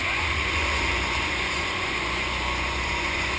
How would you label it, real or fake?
fake